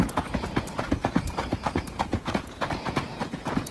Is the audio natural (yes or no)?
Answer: no